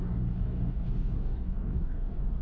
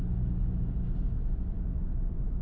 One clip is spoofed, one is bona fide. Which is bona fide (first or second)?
second